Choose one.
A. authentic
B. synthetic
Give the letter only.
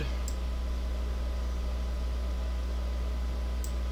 A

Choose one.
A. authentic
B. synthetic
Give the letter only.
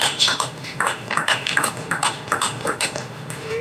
B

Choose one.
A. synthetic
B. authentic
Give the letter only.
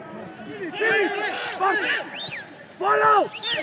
B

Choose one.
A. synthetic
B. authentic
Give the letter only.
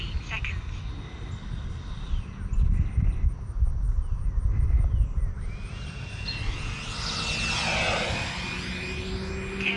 B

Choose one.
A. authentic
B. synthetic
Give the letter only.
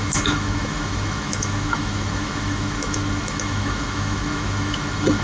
B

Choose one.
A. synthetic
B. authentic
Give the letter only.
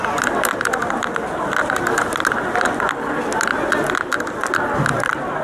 B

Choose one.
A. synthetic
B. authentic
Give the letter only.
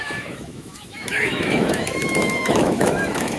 A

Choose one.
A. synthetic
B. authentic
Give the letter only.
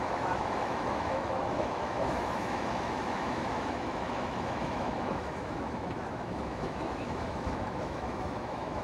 A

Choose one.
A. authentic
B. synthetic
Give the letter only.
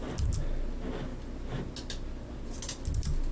A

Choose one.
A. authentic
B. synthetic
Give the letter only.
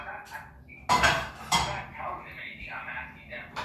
A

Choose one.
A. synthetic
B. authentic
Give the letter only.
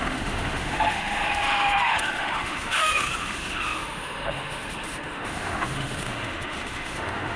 A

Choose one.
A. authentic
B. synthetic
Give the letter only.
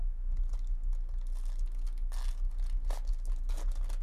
A